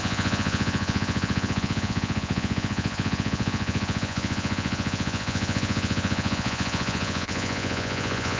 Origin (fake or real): fake